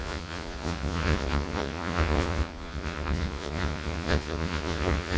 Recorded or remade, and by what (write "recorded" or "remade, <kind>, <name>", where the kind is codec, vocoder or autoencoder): remade, vocoder, Vocos